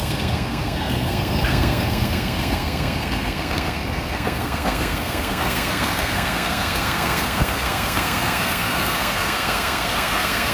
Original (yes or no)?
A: no